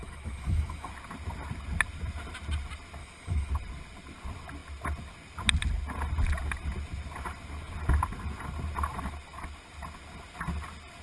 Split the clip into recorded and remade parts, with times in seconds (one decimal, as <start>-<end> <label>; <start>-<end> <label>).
0.0-0.9 remade; 0.9-3.0 recorded; 3.0-3.5 remade; 3.5-11.0 recorded